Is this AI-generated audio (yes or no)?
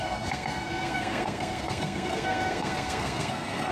yes